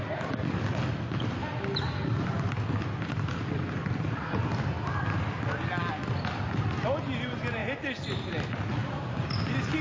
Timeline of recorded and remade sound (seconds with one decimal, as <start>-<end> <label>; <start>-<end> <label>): 0.0-9.8 recorded